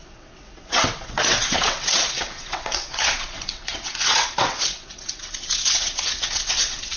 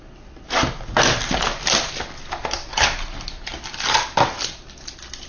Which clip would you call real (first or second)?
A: second